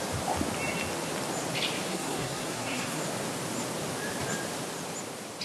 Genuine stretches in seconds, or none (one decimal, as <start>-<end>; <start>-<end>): 0.0-1.9; 3.0-5.4